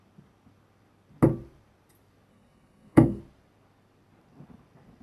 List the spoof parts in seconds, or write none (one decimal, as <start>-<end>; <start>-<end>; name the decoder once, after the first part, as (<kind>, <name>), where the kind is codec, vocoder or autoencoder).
2.3-3.2 (codec, SNAC)

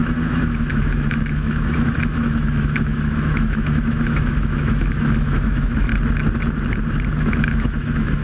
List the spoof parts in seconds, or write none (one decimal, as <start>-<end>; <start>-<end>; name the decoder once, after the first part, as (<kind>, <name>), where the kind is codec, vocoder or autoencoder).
0.0-5.9 (autoencoder, DAC-VAE); 7.2-8.2